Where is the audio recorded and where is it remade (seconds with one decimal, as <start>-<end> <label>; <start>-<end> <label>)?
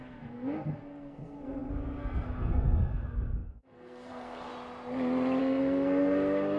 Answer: 0.0-4.5 remade; 4.5-5.4 recorded; 5.4-6.6 remade